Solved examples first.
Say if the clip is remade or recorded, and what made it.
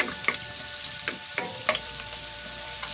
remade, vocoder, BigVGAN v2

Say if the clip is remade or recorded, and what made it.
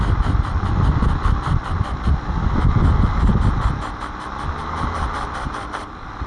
recorded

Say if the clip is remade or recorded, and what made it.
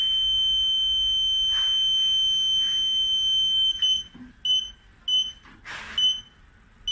recorded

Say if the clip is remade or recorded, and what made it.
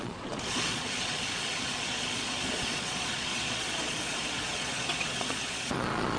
remade, vocoder, Vocos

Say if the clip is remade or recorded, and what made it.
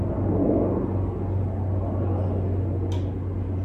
recorded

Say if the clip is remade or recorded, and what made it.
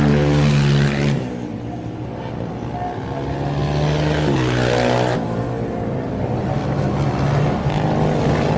recorded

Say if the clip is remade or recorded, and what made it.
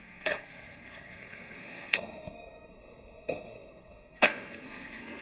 remade, codec, SNAC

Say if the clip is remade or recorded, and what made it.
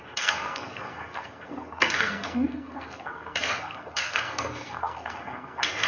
remade, codec, SNAC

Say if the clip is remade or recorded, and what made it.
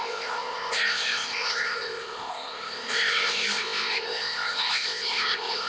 remade, codec, ZipCodec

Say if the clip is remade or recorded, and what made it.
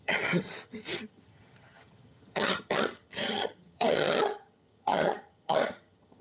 remade, vocoder, HiFi-GAN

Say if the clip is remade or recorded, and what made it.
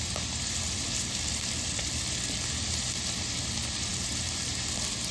remade, vocoder, BigVGAN v2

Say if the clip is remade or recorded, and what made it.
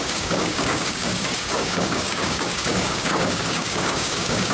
remade, codec, DAC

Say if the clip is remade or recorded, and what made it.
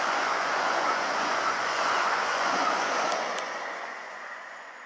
remade, vocoder, Vocos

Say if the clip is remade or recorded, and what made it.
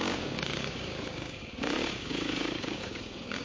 remade, codec, DAC